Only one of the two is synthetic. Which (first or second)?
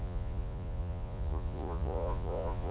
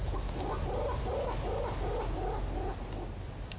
first